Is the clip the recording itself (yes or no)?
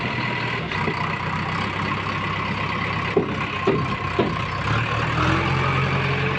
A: yes